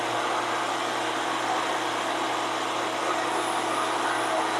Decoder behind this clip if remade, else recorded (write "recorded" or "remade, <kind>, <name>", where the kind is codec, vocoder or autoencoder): recorded